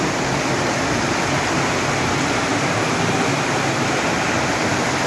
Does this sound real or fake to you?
real